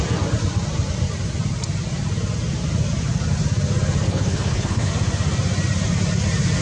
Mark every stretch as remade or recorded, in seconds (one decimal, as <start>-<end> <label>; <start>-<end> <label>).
0.0-4.1 recorded; 4.1-4.9 remade; 4.9-6.6 recorded